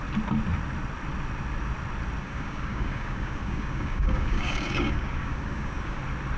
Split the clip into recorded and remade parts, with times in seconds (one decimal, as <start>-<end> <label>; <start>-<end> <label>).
0.0-2.2 recorded; 2.2-6.0 remade; 6.0-6.4 recorded